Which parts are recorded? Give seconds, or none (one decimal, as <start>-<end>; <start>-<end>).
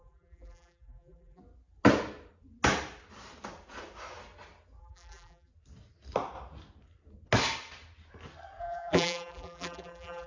1.4-4.8; 5.5-8.6